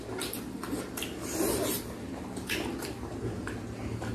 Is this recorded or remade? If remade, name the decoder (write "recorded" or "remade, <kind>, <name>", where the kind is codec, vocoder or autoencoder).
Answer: recorded